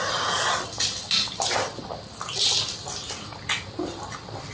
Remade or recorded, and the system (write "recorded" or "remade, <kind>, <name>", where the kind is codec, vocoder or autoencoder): recorded